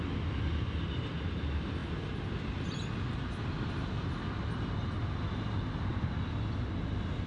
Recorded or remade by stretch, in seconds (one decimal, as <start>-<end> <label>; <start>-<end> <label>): 0.0-7.3 recorded